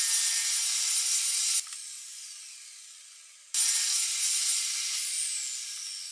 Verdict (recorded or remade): recorded